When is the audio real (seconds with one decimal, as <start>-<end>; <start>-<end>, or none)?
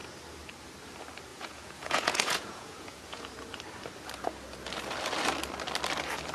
0.0-1.3; 3.3-6.3